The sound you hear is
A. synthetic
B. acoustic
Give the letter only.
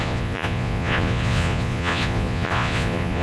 A